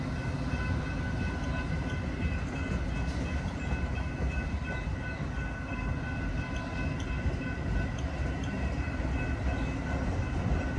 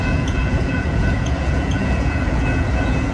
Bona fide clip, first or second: first